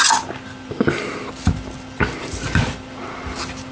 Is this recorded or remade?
recorded